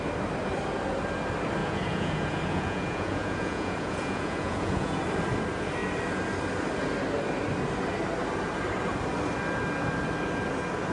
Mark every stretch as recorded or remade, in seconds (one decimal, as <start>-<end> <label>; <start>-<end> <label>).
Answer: 0.0-1.6 recorded; 1.6-5.0 remade; 5.0-10.9 recorded